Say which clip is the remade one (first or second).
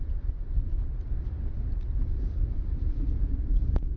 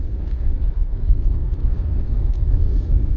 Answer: second